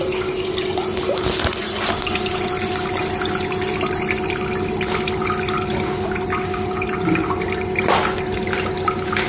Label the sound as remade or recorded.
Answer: recorded